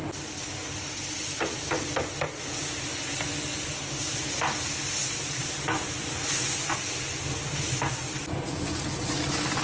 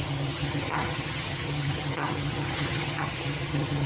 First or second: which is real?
first